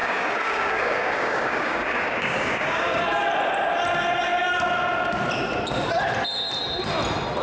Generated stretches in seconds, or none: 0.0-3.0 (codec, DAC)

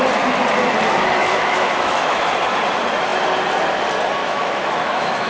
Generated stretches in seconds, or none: 1.2-2.3 (autoencoder, DAC-VAE); 4.2-5.3